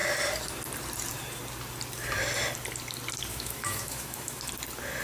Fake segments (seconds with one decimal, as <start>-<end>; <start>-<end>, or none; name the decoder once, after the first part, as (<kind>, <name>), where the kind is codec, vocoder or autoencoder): 3.3-4.4 (autoencoder, DAC-VAE)